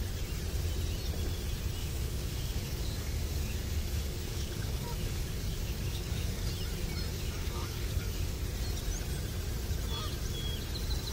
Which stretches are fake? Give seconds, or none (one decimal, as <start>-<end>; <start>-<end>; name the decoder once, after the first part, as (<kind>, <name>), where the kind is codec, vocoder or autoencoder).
1.8-6.5 (codec, DAC); 7.1-8.4